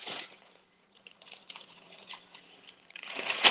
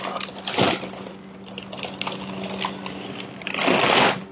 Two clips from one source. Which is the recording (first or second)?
second